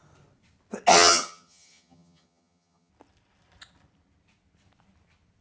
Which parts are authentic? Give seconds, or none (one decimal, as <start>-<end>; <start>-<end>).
0.0-0.9; 2.9-5.4